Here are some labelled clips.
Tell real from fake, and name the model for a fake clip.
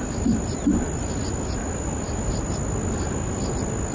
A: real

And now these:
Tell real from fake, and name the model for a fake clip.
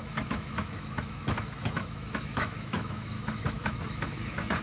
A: fake, autoencoder, DAC-VAE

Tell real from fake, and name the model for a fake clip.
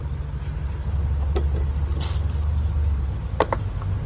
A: real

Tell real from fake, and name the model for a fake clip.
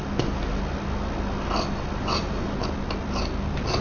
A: real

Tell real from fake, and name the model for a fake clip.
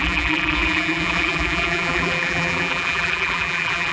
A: fake, vocoder, BigVGAN v2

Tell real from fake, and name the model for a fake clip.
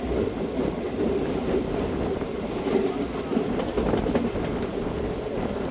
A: real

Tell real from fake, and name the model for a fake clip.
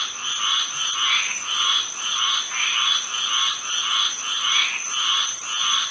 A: real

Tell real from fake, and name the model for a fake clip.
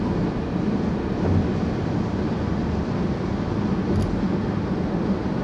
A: real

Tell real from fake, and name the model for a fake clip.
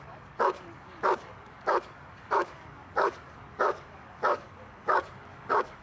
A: fake, codec, DAC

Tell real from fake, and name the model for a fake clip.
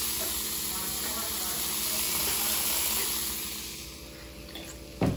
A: real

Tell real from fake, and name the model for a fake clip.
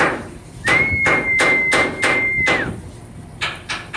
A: real